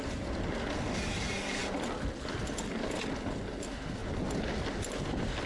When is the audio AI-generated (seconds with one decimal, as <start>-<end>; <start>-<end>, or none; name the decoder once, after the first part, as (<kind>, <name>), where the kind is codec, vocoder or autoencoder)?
none